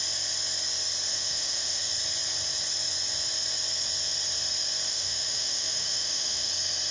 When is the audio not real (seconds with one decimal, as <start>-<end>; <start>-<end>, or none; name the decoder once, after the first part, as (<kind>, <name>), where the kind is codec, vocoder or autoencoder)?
1.1-1.9 (autoencoder, DAC-VAE); 4.9-6.5

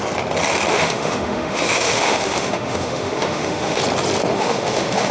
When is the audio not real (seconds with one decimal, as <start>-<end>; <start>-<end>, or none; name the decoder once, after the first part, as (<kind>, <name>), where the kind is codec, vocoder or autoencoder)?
0.7-3.8 (autoencoder, DAC-VAE); 4.3-5.1

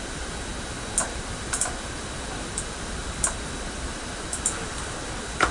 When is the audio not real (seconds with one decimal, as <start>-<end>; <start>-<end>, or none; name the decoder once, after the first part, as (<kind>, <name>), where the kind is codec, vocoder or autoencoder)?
0.0-0.5 (vocoder, BigVGAN v2); 1.2-5.5

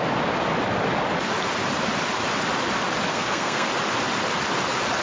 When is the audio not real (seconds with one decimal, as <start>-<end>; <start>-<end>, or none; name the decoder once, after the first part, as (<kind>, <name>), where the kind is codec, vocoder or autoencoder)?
3.1-3.7 (codec, SNAC)